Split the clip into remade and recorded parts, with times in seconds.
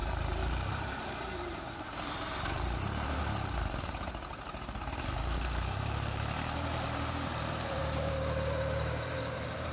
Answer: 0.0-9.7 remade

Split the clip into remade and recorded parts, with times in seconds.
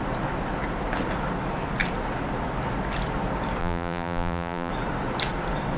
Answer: 0.0-3.6 recorded; 3.6-4.7 remade; 4.7-5.8 recorded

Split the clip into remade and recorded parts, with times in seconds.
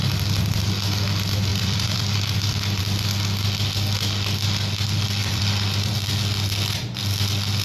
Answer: 0.0-1.5 recorded; 1.5-2.8 remade; 2.8-5.2 recorded; 5.2-5.9 remade; 5.9-7.6 recorded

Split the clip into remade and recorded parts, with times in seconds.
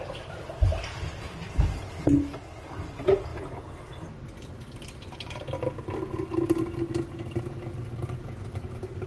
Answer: 0.0-9.1 recorded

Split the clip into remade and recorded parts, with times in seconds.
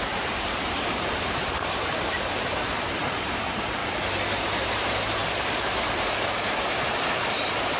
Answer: 0.0-3.8 remade; 3.8-4.4 recorded; 4.4-7.8 remade